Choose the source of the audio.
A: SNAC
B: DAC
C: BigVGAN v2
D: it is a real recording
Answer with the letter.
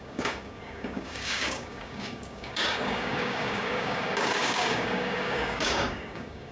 B